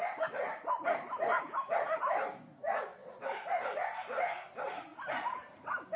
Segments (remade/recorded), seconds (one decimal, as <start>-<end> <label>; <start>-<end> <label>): 0.0-6.0 recorded